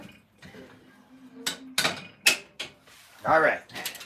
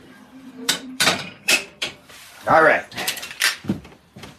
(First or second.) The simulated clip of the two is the second